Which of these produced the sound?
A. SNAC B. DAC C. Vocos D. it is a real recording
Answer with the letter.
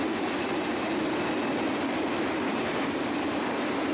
D